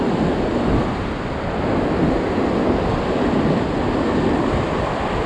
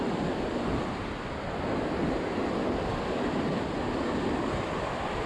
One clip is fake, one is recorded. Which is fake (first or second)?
second